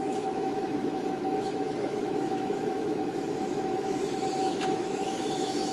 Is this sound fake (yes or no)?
yes